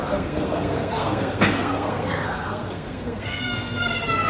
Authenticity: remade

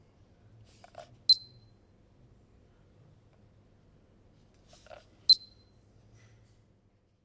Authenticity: recorded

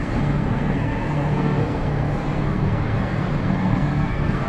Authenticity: remade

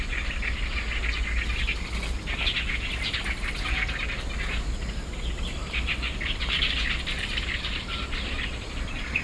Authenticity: recorded